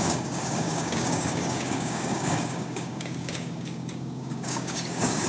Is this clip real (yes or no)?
no